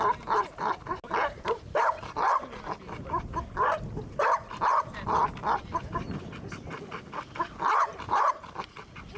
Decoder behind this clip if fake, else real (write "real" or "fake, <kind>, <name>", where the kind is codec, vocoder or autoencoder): real